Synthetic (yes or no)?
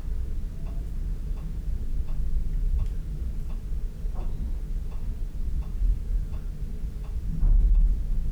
no